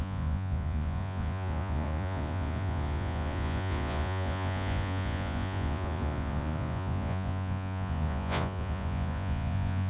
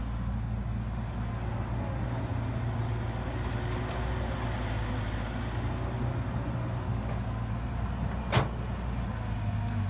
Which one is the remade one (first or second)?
first